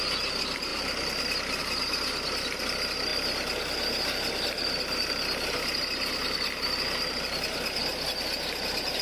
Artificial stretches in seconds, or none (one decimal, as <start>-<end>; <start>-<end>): none